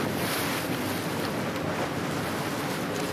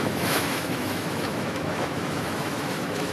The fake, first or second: second